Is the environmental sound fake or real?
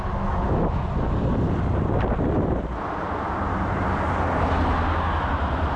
real